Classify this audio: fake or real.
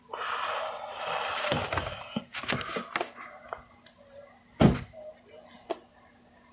real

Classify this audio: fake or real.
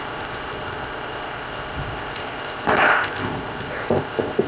fake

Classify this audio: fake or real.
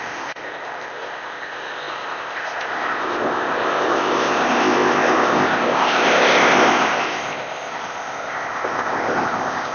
fake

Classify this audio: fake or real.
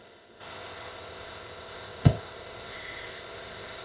fake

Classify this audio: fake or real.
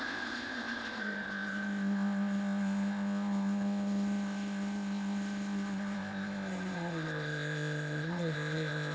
fake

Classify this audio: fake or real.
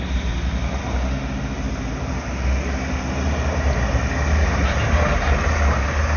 real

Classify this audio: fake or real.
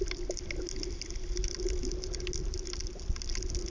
real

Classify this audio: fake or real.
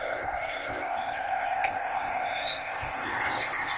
fake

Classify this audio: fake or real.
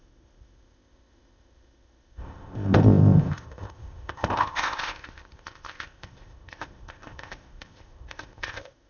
fake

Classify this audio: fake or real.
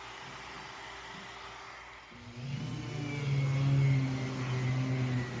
real